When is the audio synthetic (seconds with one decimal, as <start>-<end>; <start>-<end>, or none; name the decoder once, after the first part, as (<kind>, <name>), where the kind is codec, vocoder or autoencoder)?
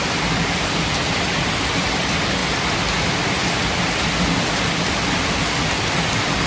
none